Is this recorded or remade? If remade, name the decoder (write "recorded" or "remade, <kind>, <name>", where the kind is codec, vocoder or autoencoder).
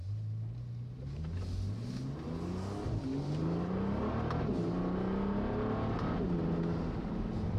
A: recorded